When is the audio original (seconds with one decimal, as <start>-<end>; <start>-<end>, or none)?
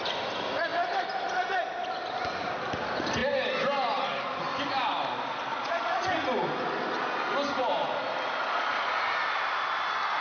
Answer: 0.0-5.5; 6.1-8.4; 9.0-10.2